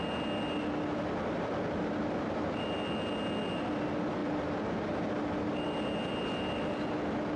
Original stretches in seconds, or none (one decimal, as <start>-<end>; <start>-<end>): 0.0-7.4